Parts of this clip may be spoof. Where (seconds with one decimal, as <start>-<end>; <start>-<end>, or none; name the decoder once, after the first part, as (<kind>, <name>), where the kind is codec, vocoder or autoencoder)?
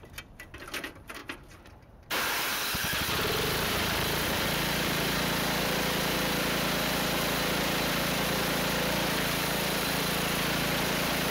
0.0-11.3 (vocoder, BigVGAN v2)